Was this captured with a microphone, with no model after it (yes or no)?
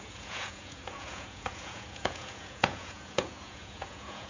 no